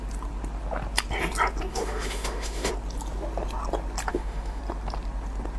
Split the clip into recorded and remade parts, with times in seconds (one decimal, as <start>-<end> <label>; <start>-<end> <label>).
0.0-1.7 recorded; 1.7-2.7 remade; 2.7-4.1 recorded; 4.1-4.6 remade; 4.6-5.6 recorded